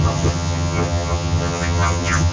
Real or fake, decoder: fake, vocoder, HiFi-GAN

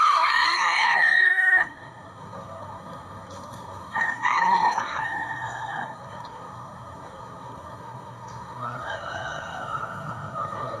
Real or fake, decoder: fake, codec, SNAC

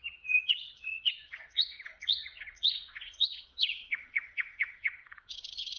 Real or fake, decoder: fake, vocoder, Vocos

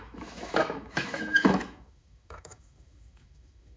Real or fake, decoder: fake, autoencoder, DAC-VAE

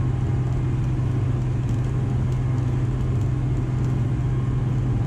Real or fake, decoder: real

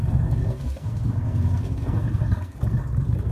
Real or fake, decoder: fake, codec, SNAC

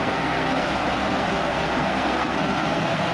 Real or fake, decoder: fake, codec, SNAC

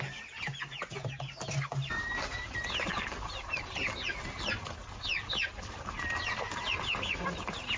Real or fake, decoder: real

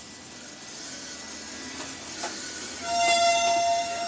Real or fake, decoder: real